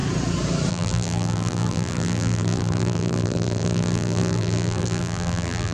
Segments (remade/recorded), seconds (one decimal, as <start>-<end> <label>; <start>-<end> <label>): 0.0-0.7 recorded; 0.7-5.7 remade

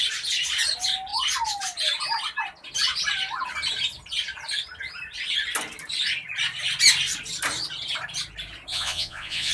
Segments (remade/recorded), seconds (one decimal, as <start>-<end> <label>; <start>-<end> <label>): 0.0-8.7 recorded; 8.7-9.5 remade

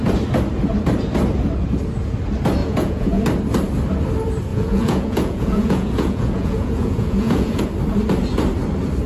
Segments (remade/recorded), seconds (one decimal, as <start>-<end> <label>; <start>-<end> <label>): 0.0-2.6 recorded; 2.6-3.2 remade; 3.2-4.5 recorded; 4.5-7.6 remade; 7.6-9.1 recorded